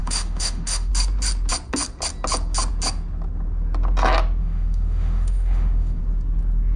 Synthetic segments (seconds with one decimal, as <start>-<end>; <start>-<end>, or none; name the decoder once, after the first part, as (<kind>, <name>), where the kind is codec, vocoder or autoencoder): 0.0-0.9 (autoencoder, DAC-VAE); 4.4-6.0